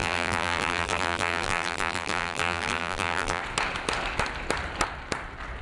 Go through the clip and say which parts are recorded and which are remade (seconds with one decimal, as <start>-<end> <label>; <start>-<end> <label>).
0.0-3.4 remade; 3.4-5.6 recorded